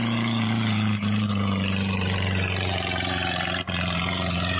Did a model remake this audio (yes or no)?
yes